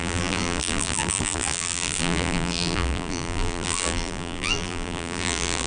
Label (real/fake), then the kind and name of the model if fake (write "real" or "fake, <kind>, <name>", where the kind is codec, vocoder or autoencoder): fake, vocoder, BigVGAN v2